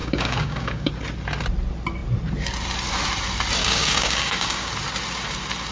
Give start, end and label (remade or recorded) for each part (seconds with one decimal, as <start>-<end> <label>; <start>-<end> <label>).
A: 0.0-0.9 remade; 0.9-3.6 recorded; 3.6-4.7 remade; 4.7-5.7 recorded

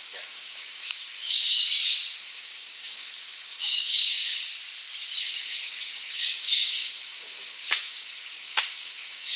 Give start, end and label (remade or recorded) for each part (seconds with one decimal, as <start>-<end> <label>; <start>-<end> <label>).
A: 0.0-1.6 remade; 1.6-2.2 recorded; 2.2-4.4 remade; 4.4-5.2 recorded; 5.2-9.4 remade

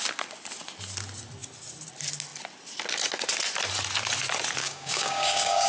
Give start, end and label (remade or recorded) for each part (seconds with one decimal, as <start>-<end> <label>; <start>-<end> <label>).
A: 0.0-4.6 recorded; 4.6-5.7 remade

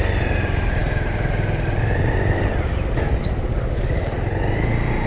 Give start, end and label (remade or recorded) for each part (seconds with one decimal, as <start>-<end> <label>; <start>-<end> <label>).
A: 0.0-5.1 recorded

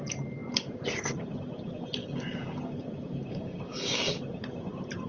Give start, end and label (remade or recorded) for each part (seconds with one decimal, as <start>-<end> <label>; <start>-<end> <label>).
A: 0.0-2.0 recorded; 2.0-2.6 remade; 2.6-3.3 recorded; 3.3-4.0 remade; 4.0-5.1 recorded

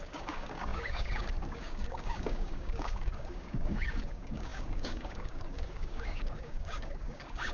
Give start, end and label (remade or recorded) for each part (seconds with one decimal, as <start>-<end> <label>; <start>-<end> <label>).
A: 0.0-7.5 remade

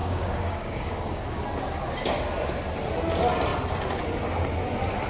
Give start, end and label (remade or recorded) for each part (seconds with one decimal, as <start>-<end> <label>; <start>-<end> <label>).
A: 0.0-1.4 remade; 1.4-5.1 recorded